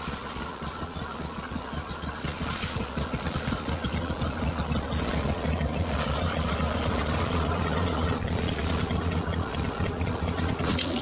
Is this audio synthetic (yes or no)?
yes